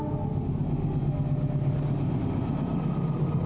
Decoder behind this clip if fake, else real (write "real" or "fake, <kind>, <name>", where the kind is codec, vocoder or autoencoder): real